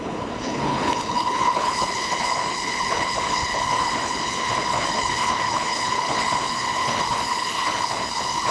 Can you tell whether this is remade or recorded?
remade